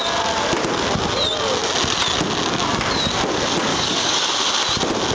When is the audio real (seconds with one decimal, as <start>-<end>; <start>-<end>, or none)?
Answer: 0.0-3.7; 4.3-5.1

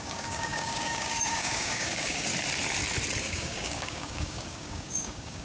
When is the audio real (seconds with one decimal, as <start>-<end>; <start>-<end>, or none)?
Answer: 2.3-3.2

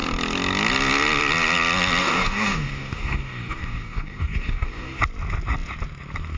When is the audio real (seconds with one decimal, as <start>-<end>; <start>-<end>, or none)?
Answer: 0.0-2.0; 5.0-6.4

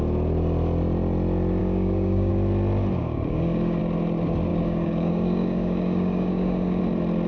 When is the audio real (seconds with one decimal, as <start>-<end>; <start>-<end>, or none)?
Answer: 0.0-1.6; 2.3-3.0; 3.8-4.5; 6.8-7.3

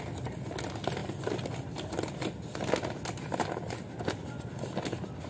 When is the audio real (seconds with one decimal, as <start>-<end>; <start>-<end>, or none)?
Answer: 0.0-5.3

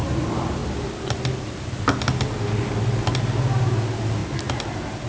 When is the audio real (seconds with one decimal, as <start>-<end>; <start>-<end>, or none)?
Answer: 0.0-5.1